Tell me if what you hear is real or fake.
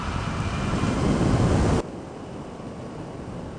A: real